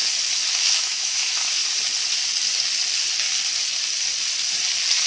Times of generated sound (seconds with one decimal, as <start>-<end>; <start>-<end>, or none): 0.5-1.6